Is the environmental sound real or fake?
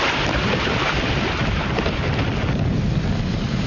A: real